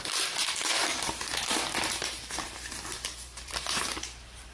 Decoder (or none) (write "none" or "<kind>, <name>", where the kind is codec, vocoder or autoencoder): vocoder, BigVGAN v2